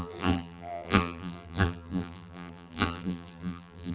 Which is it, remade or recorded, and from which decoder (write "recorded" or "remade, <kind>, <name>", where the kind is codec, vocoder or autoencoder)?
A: remade, vocoder, BigVGAN v2